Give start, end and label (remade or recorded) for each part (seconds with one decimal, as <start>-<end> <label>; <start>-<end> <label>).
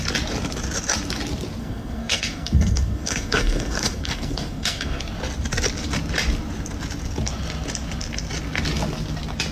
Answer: 0.0-1.6 recorded; 1.6-5.0 remade; 5.0-9.5 recorded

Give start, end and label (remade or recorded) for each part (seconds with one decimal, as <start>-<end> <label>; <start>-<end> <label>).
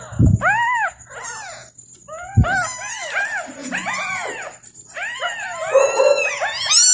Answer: 0.0-3.6 recorded; 3.6-4.3 remade; 4.3-6.9 recorded